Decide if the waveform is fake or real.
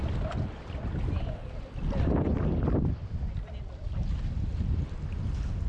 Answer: real